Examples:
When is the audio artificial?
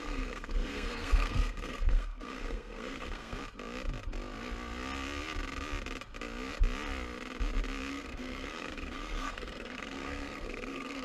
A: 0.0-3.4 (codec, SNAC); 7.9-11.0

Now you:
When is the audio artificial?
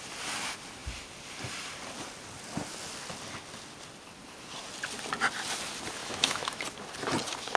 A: 6.0-6.6 (autoencoder, DAC-VAE)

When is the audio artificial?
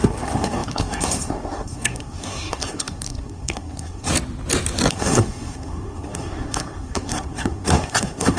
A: 0.0-4.1 (codec, SNAC); 4.9-8.4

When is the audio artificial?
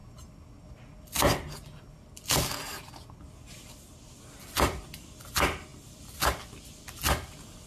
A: none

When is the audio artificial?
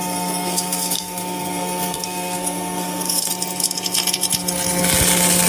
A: 0.0-3.3 (codec, SNAC)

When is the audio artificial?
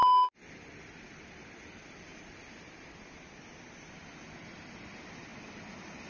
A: none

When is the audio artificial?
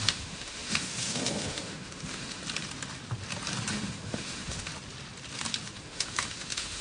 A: 0.0-2.4 (autoencoder, DAC-VAE); 3.7-4.7; 5.8-6.8